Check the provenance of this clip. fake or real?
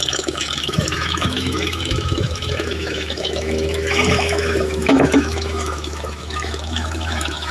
fake